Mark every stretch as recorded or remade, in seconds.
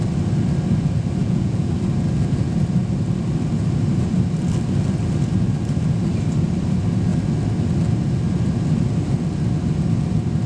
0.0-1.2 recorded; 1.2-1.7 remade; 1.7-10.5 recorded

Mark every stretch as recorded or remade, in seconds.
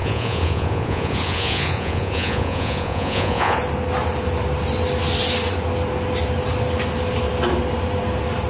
0.0-3.6 remade; 3.6-8.5 recorded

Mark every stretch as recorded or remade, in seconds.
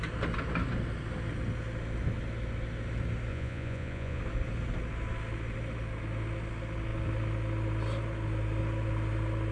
0.0-3.3 recorded; 3.3-4.2 remade; 4.2-9.5 recorded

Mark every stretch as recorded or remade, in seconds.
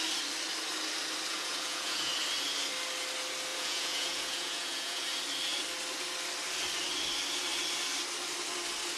0.0-1.3 recorded; 1.3-2.1 remade; 2.1-3.5 recorded; 3.5-5.0 remade; 5.0-9.0 recorded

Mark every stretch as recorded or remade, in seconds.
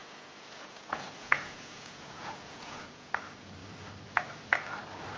0.0-3.1 remade; 3.1-5.2 recorded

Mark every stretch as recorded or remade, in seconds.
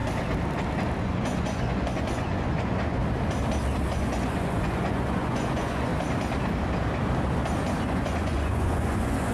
0.0-1.0 recorded; 1.0-3.0 remade; 3.0-3.9 recorded; 3.9-5.9 remade; 5.9-7.9 recorded; 7.9-9.3 remade